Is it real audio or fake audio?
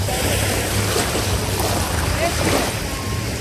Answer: real